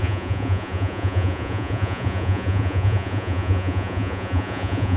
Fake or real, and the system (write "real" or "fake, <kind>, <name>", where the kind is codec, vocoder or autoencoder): fake, vocoder, Vocos